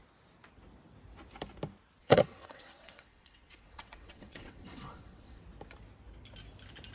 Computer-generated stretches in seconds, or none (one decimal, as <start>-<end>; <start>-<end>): 2.0-5.4